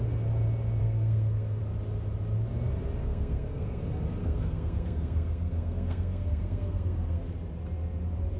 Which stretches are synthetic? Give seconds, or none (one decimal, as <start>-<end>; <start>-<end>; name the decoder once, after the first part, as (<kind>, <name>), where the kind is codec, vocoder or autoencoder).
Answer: 0.8-1.6 (codec, SNAC); 3.0-3.8; 4.2-7.2